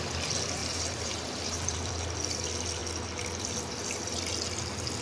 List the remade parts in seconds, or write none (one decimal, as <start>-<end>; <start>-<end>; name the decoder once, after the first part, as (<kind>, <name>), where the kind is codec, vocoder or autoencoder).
0.6-1.9 (vocoder, BigVGAN v2)